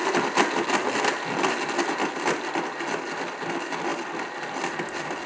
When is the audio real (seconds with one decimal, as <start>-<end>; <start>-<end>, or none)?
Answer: 0.0-5.3